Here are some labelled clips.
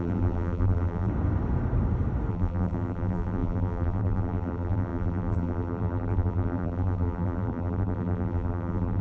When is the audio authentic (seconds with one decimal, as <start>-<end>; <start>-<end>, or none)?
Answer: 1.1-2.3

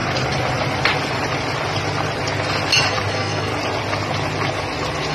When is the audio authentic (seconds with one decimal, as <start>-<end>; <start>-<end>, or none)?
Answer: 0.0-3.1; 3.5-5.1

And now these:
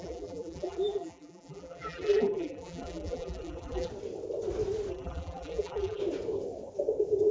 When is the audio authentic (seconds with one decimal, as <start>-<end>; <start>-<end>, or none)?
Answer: 3.9-4.9; 6.0-7.3

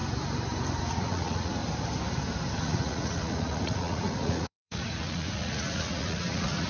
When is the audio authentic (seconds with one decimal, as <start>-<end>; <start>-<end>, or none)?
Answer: 0.0-0.9; 1.6-2.6

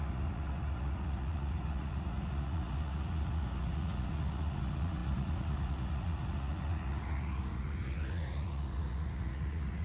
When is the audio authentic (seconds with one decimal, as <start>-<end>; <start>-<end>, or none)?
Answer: none

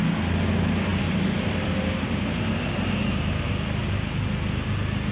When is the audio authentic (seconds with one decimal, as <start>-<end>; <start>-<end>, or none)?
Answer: 0.0-5.1

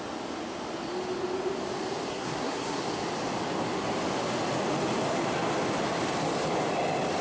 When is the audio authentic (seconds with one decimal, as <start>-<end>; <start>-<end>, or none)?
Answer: 0.0-2.1; 2.8-7.2

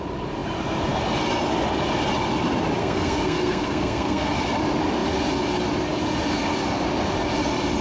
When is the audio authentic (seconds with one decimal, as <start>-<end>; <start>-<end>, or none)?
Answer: 0.0-2.8; 4.3-7.8